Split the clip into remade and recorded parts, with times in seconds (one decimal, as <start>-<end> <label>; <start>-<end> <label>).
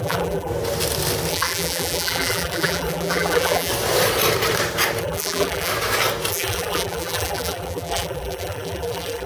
0.0-0.5 remade; 0.5-1.3 recorded; 1.3-3.7 remade; 3.7-5.0 recorded; 5.0-5.7 remade; 5.7-6.3 recorded; 6.3-9.3 remade